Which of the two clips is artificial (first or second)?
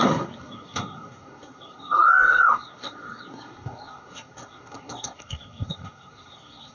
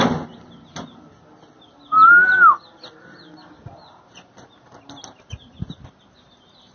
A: first